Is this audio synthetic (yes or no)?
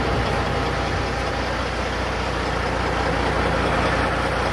no